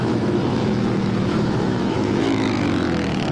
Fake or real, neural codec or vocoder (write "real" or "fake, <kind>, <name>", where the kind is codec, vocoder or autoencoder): fake, autoencoder, DAC-VAE